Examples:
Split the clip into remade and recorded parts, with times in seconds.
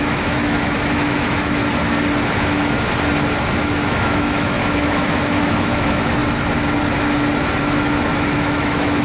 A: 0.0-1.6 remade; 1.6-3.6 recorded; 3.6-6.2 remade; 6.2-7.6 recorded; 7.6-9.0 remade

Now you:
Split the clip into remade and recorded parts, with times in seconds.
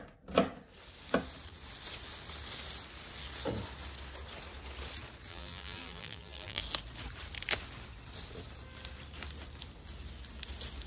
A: 0.0-5.3 recorded; 5.3-6.6 remade; 6.6-10.9 recorded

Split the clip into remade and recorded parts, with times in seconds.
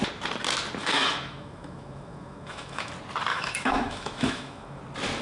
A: 0.0-0.8 recorded; 0.8-2.9 remade; 2.9-3.3 recorded; 3.3-4.8 remade; 4.8-5.2 recorded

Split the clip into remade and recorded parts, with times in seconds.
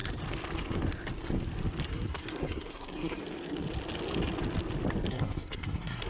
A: 0.0-1.9 recorded; 1.9-3.2 remade; 3.2-5.1 recorded; 5.1-6.1 remade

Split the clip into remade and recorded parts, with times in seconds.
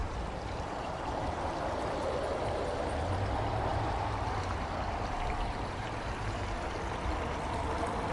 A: 0.0-1.8 remade; 1.8-3.7 recorded; 3.7-6.9 remade; 6.9-8.1 recorded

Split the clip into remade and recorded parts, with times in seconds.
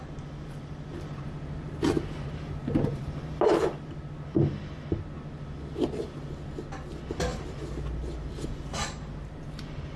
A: 0.0-0.9 recorded; 0.9-3.4 remade; 3.4-7.3 recorded; 7.3-10.0 remade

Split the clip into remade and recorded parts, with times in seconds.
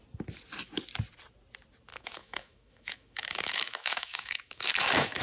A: 0.0-1.9 recorded; 1.9-5.2 remade